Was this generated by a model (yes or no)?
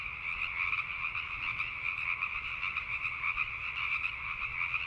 no